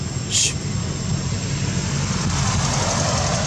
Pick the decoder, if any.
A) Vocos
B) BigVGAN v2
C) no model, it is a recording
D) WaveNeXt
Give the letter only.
C